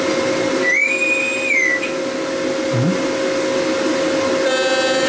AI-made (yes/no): no